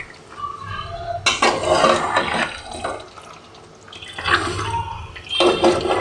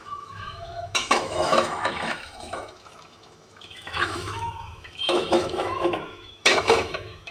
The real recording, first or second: first